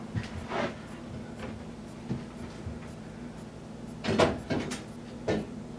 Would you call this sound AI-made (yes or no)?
no